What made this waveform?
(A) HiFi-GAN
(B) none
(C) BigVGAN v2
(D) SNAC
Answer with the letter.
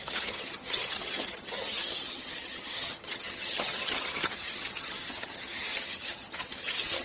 A